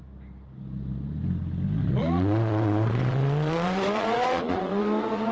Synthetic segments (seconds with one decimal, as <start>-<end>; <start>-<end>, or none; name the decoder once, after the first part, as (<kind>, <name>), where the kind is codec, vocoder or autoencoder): 1.8-5.3 (vocoder, Vocos)